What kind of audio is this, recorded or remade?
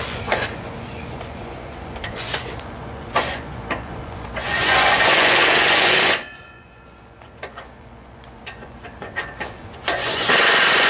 remade